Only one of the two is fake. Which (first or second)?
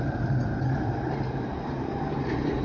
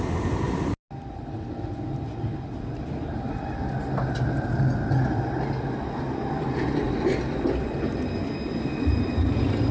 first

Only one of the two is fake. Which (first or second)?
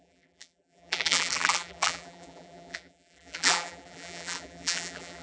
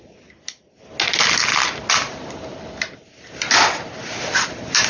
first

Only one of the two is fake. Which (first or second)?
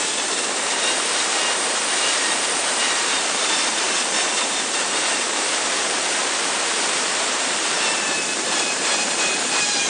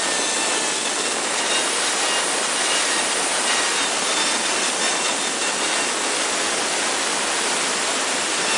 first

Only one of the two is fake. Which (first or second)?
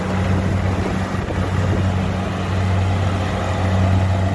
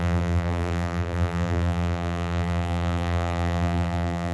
second